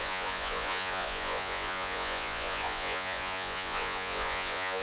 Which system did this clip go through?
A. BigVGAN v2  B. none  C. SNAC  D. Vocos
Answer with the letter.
D